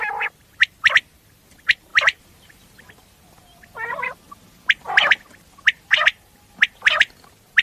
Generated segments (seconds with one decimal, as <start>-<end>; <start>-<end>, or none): 1.9-2.8